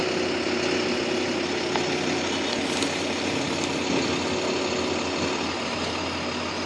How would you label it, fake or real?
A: real